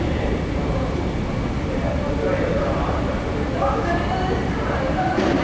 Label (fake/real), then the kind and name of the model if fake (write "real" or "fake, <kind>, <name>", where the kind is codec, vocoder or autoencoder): fake, vocoder, BigVGAN v2